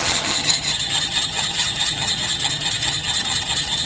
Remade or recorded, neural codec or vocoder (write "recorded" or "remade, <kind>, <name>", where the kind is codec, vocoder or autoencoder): remade, vocoder, HiFi-GAN